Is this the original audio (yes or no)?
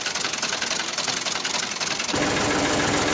yes